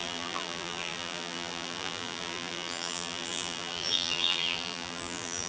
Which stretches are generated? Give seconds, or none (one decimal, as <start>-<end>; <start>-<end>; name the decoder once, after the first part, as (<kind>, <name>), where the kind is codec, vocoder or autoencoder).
0.0-5.5 (vocoder, BigVGAN v2)